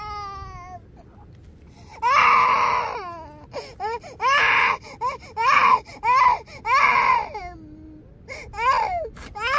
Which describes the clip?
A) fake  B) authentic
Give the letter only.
B